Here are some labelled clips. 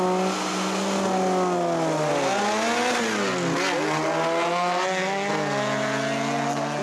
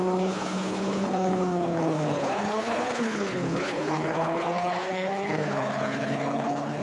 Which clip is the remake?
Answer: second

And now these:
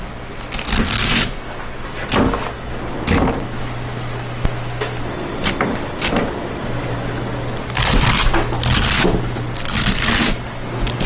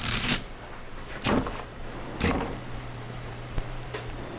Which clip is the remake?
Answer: second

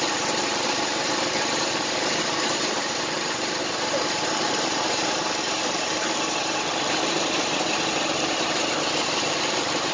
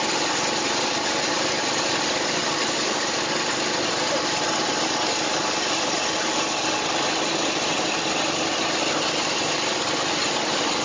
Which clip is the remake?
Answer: first